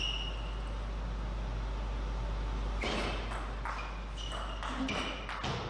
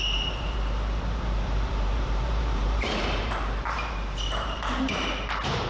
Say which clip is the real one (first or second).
first